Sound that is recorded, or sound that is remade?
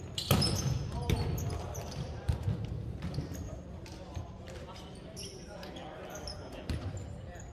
recorded